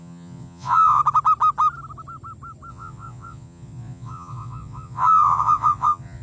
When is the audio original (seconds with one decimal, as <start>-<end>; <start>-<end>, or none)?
1.0-2.7